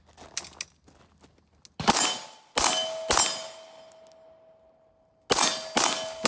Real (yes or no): yes